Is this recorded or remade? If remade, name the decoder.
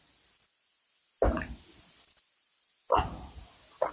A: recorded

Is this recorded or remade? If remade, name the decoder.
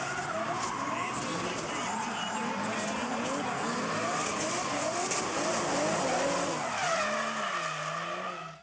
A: recorded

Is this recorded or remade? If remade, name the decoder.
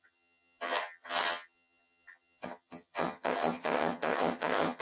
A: remade, vocoder, HiFi-GAN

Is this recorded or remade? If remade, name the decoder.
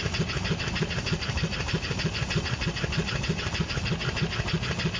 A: recorded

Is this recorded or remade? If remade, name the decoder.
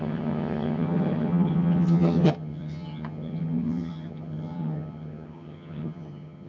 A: remade, vocoder, HiFi-GAN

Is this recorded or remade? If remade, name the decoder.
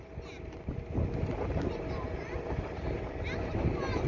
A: recorded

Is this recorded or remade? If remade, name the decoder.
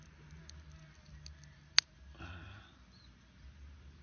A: recorded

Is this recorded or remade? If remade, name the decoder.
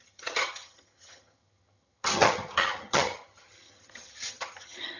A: remade, vocoder, HiFi-GAN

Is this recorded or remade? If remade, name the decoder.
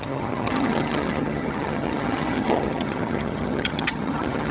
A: remade, vocoder, HiFi-GAN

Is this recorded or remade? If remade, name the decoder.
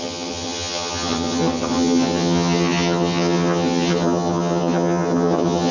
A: remade, vocoder, HiFi-GAN